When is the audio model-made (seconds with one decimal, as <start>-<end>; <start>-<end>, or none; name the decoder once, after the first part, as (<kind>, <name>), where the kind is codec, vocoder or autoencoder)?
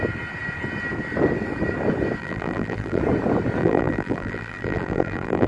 2.2-3.0 (vocoder, BigVGAN v2); 3.6-5.5